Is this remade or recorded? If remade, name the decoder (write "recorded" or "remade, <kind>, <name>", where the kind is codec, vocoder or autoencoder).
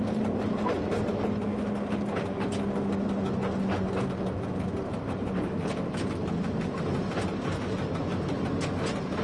recorded